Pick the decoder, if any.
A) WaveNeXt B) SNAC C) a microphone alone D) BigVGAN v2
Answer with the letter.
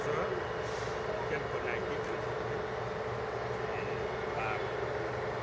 C